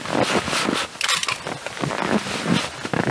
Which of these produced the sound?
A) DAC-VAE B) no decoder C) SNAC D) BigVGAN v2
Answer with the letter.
B